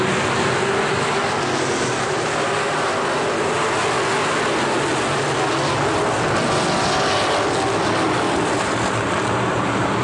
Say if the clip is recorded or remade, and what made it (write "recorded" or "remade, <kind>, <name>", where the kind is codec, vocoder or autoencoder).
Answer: recorded